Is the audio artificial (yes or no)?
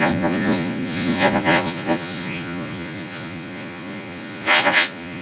yes